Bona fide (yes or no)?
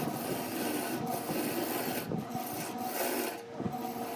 yes